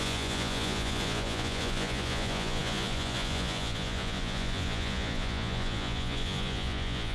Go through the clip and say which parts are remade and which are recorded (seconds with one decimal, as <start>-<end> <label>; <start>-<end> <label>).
0.0-7.1 remade